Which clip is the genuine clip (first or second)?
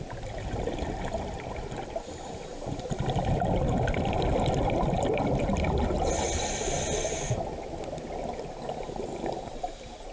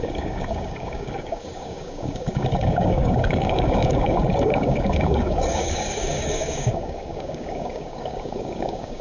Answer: first